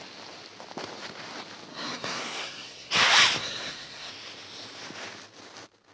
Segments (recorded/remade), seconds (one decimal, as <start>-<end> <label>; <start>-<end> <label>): 0.0-1.7 recorded; 1.7-2.9 remade; 2.9-3.4 recorded; 3.4-4.1 remade; 4.1-5.9 recorded